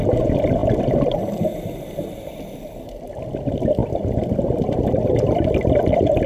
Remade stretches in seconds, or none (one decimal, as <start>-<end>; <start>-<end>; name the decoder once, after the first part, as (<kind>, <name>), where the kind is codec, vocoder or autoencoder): 0.6-1.2 (vocoder, BigVGAN v2); 3.8-6.3